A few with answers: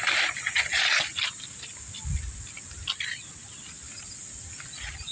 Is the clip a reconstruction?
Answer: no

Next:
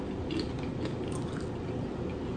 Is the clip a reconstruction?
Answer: no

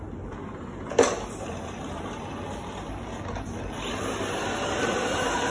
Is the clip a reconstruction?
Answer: no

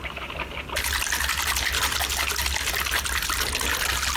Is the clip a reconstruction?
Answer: no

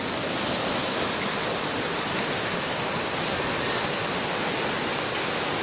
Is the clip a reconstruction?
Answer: no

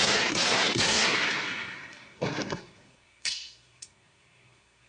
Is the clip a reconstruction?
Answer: yes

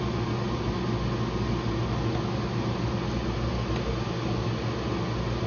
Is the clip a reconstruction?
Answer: no